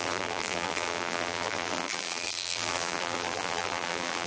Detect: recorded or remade remade